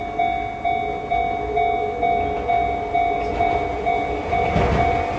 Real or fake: real